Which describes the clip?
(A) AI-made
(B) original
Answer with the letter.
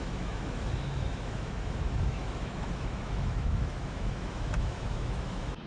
A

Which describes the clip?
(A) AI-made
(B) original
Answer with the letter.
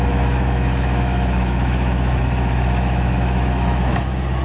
A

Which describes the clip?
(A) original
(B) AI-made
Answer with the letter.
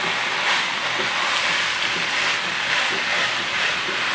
A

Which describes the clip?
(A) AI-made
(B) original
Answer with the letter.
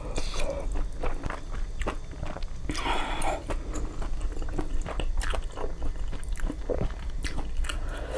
B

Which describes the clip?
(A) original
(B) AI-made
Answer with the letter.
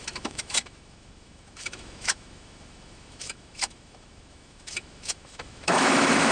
B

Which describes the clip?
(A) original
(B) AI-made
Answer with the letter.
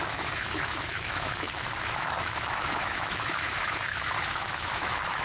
B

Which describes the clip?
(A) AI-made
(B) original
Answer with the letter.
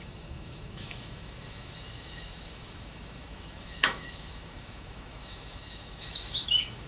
A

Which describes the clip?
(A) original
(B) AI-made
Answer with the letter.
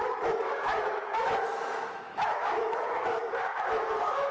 B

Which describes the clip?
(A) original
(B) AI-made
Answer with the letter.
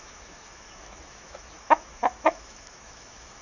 B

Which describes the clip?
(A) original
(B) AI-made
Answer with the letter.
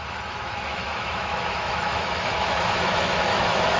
B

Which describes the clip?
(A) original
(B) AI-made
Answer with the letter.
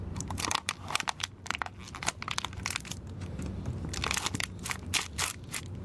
A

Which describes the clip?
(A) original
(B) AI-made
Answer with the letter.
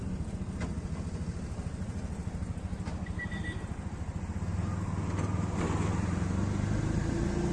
A